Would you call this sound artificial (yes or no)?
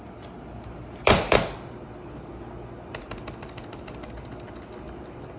no